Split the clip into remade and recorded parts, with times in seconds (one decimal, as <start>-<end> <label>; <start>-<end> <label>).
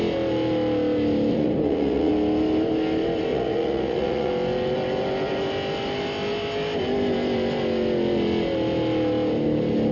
0.0-1.3 recorded; 1.3-2.1 remade; 2.1-3.3 recorded; 3.3-4.3 remade; 4.3-9.9 recorded